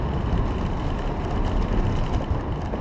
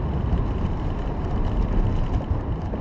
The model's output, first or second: second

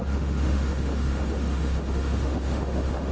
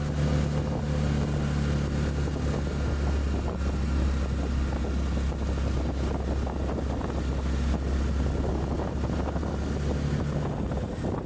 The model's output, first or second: first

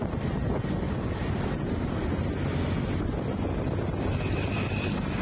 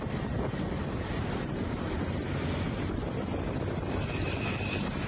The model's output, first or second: second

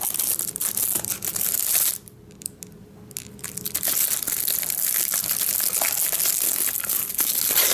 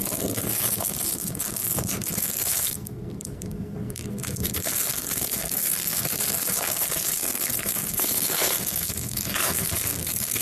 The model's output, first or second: second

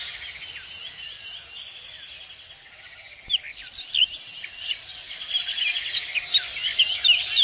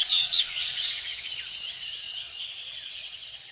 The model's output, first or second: second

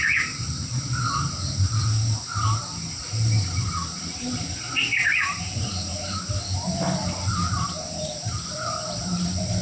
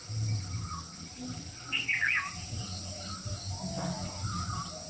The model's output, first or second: first